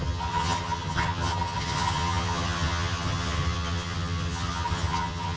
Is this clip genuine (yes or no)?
no